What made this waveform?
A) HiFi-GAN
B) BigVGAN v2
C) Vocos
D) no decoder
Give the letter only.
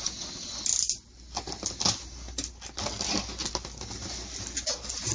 D